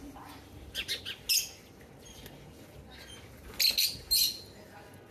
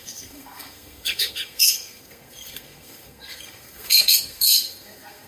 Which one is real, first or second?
first